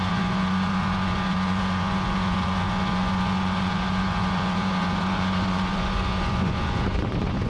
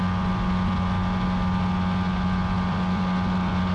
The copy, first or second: first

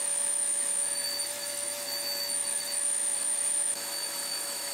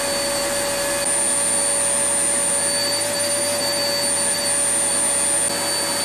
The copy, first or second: first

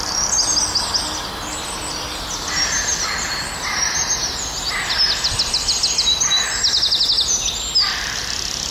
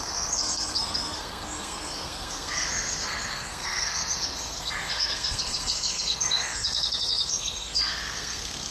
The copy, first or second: second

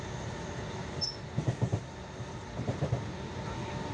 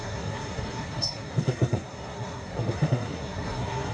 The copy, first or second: second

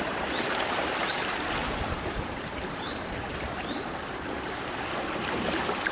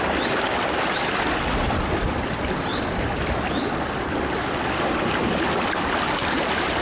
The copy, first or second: first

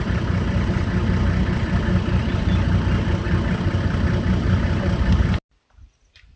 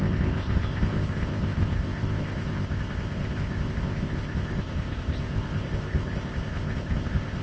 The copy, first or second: second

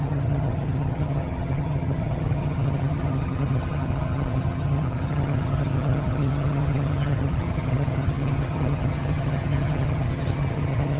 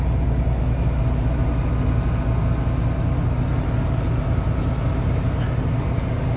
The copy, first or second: first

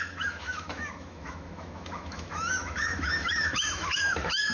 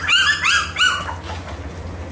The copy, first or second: first